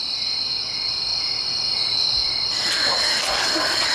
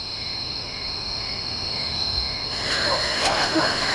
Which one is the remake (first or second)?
second